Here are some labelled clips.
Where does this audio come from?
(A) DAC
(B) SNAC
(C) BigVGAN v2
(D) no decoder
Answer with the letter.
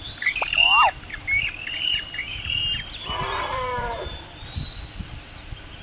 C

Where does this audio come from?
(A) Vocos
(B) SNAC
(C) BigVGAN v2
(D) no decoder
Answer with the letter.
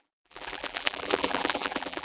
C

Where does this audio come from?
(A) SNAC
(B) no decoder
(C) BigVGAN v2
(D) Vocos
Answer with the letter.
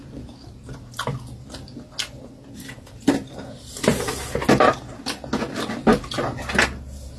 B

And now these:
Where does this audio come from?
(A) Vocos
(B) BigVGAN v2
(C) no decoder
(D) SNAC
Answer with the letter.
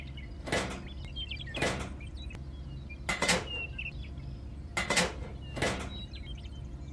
C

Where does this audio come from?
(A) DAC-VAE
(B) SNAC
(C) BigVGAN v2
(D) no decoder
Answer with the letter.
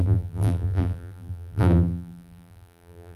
C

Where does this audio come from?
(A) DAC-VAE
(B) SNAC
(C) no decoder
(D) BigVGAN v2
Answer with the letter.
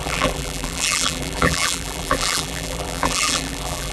D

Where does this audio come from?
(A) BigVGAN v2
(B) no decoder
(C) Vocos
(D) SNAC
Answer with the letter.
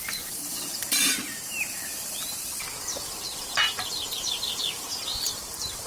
A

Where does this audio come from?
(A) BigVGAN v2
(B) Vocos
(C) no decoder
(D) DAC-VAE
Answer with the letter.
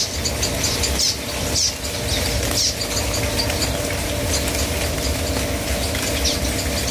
C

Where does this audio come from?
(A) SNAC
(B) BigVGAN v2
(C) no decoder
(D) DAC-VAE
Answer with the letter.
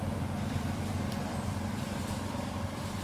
B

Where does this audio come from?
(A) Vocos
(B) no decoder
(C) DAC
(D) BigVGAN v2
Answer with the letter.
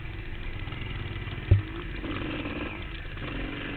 B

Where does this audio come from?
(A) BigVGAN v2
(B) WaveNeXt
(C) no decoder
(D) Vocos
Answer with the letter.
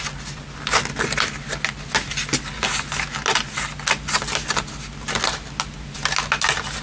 C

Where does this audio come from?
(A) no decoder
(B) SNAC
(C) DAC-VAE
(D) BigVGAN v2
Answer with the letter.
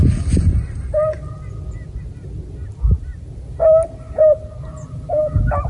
A